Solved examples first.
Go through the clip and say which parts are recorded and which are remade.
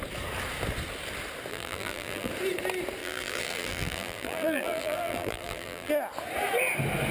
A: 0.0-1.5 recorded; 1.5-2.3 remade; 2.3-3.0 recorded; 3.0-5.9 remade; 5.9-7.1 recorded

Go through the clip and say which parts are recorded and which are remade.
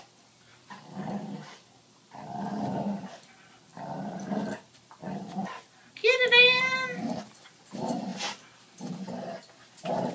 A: 0.0-0.5 recorded; 0.5-2.5 remade; 2.5-3.7 recorded; 3.7-4.9 remade; 4.9-10.1 recorded